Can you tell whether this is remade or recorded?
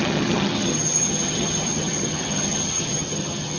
remade